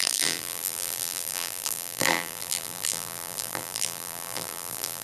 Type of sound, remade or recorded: remade